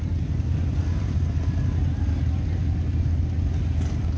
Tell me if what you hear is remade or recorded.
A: recorded